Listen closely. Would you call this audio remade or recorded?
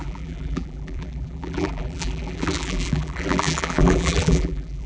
remade